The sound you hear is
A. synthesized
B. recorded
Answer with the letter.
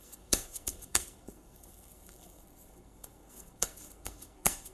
A